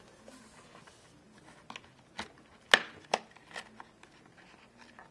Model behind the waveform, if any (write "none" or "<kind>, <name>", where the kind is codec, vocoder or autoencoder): none